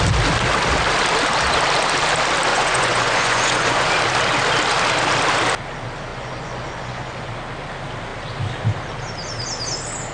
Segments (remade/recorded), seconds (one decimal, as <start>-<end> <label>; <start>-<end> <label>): 0.0-2.5 recorded; 2.5-3.9 remade; 3.9-6.1 recorded; 6.1-7.3 remade; 7.3-10.1 recorded